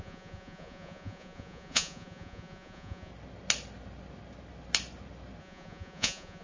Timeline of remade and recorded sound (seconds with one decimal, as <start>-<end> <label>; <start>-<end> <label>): 0.0-3.1 remade; 3.1-5.4 recorded; 5.4-6.4 remade